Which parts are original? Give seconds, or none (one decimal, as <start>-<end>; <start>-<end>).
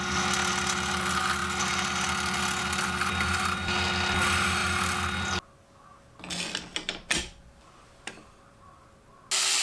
0.0-6.7; 9.1-9.6